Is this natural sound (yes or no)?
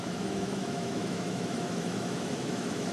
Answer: no